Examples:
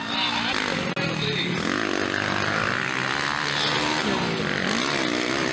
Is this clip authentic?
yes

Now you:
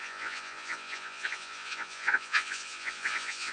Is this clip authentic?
no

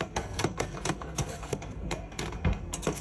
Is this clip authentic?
no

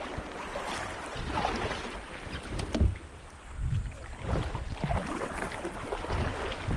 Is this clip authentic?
yes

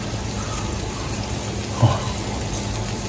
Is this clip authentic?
yes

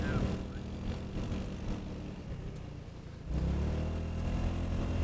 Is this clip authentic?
yes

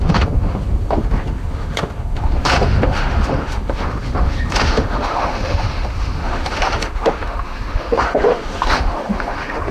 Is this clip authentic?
no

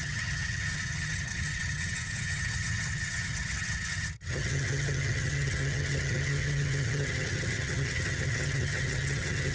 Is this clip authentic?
no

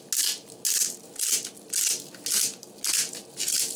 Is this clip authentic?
yes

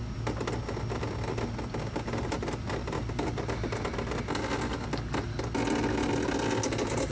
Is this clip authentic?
yes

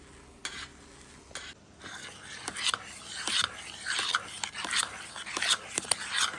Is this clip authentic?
yes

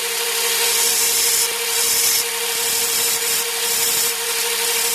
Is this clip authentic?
yes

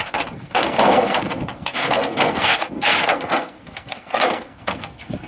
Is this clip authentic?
no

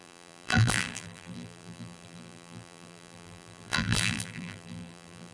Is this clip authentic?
no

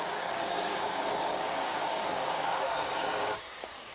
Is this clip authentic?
no